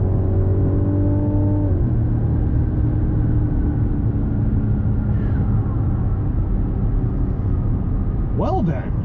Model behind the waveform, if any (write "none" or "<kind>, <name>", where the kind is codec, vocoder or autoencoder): none